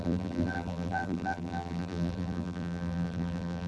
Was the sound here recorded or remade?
remade